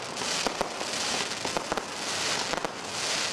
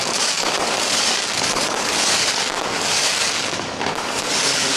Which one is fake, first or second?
second